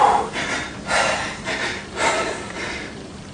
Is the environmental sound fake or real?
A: fake